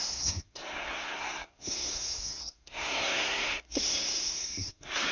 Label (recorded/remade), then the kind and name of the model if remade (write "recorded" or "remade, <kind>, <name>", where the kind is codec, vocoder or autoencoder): remade, codec, SNAC